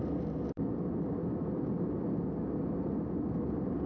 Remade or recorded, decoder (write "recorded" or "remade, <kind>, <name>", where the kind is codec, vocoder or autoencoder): recorded